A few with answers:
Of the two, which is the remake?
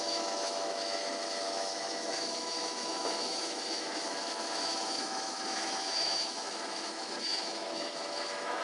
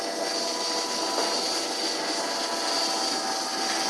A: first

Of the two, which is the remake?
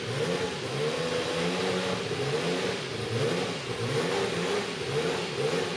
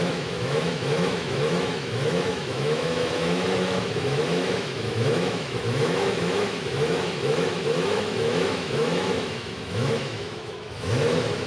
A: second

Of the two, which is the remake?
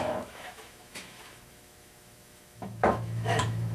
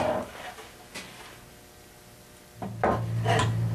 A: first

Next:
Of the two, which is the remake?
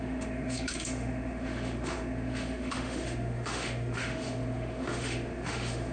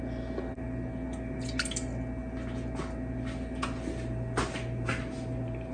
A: first